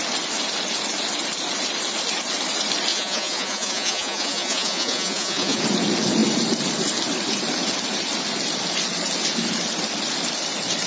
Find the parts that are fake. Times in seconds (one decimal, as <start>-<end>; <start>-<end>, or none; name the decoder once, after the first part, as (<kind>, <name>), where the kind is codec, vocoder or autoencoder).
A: 2.9-5.6 (vocoder, Vocos)